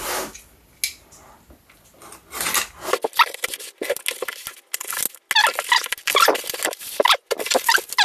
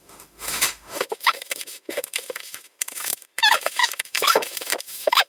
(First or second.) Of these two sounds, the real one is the first